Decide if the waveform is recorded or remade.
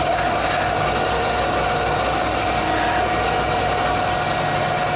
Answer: recorded